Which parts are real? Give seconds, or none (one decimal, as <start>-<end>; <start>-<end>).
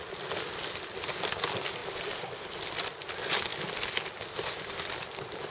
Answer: 0.0-5.5